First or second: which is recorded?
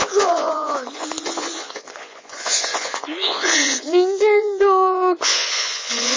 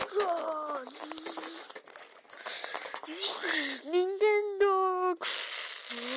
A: second